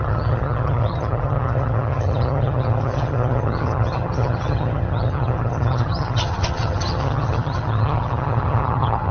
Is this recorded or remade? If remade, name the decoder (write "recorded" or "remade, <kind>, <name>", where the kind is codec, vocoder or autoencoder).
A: remade, vocoder, HiFi-GAN